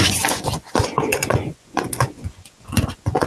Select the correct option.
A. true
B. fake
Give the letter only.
B